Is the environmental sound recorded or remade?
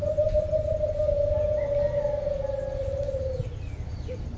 recorded